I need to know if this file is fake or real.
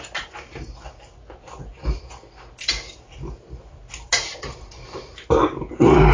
real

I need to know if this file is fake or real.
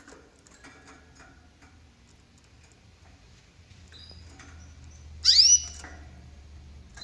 real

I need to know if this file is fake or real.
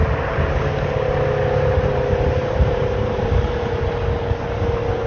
real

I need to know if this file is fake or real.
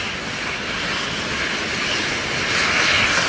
real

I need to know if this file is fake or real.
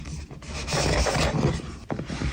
real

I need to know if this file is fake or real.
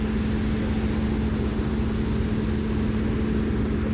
real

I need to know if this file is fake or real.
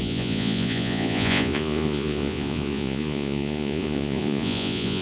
fake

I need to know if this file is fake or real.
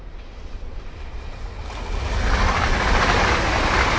real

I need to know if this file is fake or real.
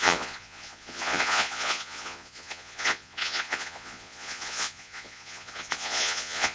fake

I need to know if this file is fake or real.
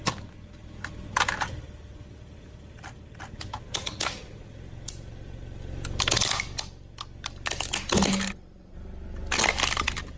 real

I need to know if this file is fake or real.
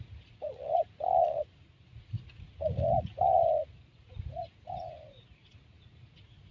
fake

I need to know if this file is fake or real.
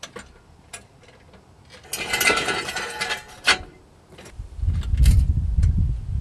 real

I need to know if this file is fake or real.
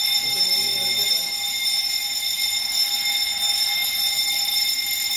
real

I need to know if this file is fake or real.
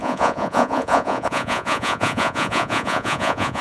fake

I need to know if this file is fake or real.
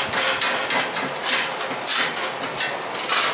real